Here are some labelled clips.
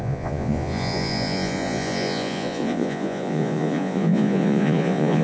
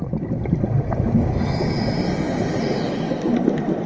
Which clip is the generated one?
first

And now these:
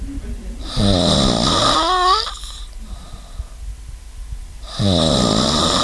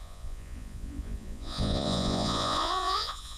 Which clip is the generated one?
second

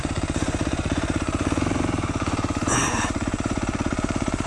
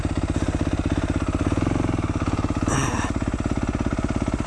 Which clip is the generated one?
first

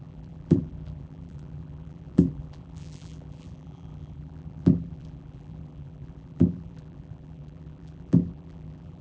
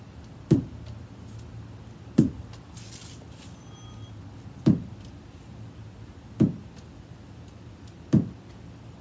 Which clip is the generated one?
first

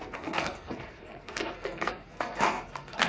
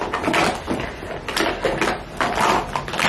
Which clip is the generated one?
first